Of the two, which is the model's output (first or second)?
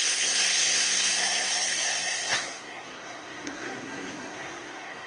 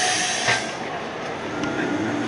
first